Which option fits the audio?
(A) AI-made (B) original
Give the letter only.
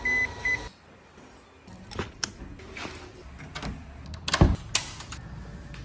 B